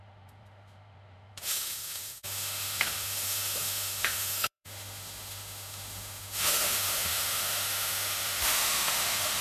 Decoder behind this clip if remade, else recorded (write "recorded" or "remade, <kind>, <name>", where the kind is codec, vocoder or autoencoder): remade, autoencoder, DAC-VAE